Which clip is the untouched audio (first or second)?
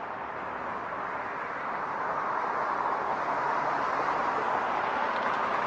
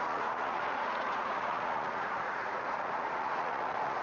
first